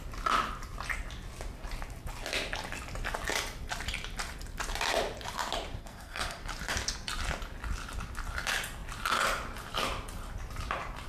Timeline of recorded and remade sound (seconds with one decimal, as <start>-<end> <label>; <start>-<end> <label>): 0.0-5.8 recorded; 5.8-6.4 remade; 6.4-11.1 recorded